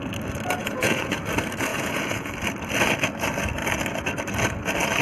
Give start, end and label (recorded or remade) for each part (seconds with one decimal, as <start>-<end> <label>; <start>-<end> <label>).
0.0-0.6 recorded; 0.6-1.2 remade; 1.2-1.7 recorded; 1.7-2.3 remade; 2.3-5.0 recorded